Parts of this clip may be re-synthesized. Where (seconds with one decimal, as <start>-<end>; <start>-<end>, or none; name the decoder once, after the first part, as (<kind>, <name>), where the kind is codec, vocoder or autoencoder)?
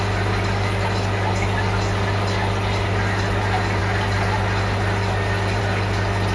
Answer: none